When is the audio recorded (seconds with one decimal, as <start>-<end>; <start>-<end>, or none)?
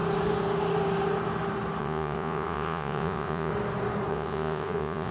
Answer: 0.0-1.8; 3.5-4.1